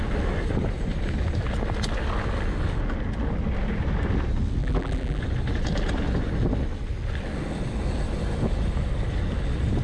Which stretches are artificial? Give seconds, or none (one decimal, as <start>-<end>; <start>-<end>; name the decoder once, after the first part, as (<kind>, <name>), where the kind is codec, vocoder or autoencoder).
4.6-5.2 (vocoder, BigVGAN v2)